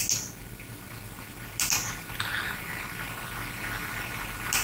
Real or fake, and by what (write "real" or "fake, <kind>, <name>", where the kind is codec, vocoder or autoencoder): real